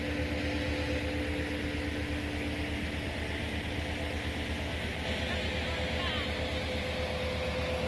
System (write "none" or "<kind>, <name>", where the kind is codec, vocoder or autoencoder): none